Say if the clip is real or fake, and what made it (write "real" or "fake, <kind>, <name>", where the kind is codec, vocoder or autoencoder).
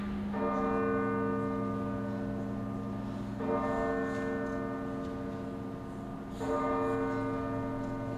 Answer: real